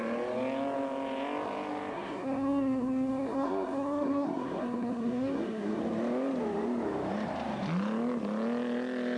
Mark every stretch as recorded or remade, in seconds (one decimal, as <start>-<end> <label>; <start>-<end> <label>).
0.0-1.9 recorded; 1.9-5.8 remade; 5.8-9.2 recorded